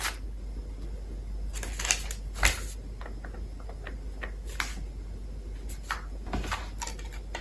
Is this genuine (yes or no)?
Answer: yes